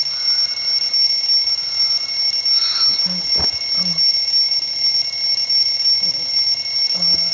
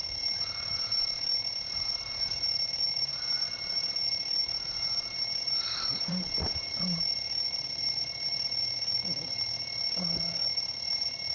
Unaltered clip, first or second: first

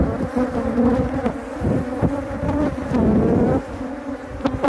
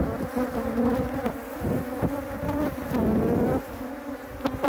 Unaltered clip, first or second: second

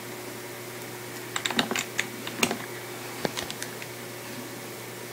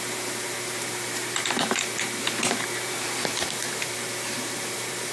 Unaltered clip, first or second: first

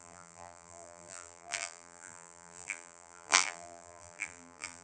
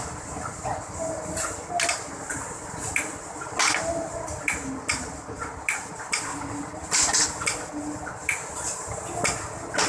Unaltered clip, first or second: second